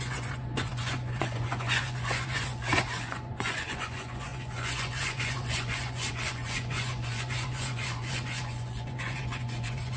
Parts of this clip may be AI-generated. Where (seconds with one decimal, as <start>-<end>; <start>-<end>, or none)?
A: 0.0-10.0